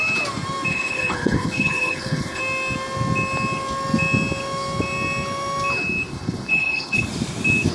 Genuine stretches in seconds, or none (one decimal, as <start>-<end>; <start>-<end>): 0.0-0.7; 2.4-6.1; 7.1-7.7